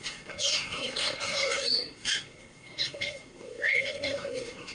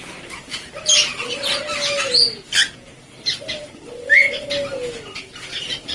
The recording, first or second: second